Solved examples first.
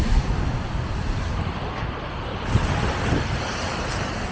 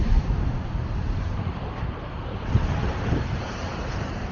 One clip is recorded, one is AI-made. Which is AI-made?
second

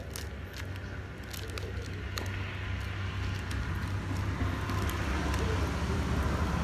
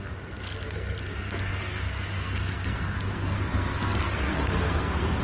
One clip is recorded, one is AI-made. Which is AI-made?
second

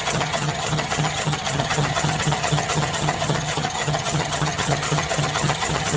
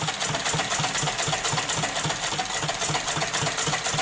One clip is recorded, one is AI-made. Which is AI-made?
first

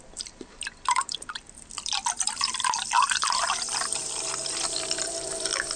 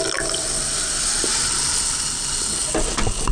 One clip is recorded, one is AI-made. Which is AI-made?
first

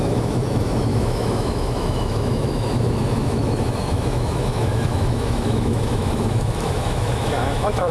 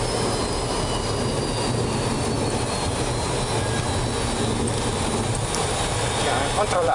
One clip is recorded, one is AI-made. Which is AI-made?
first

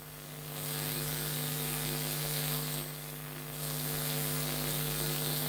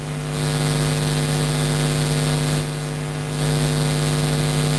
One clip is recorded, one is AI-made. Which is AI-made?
first